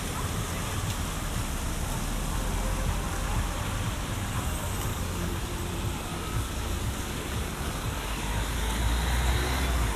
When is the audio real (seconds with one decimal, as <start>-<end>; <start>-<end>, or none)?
0.0-4.9; 5.4-6.1; 8.8-10.0